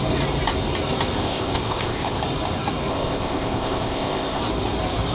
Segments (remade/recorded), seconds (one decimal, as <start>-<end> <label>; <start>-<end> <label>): 0.0-1.2 recorded; 1.2-2.2 remade; 2.2-2.9 recorded; 2.9-4.4 remade; 4.4-5.1 recorded